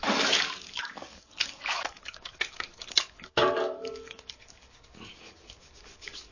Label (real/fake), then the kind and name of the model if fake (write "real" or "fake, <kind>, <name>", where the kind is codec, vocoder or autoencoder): fake, codec, DAC